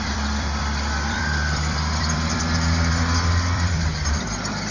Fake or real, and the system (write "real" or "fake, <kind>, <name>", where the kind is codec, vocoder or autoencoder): fake, vocoder, BigVGAN v2